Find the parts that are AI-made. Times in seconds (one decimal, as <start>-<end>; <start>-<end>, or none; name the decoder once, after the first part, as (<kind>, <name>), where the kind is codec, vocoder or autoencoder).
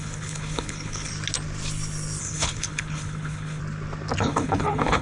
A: 0.0-1.1 (codec, HILCodec); 2.2-3.6; 4.2-5.0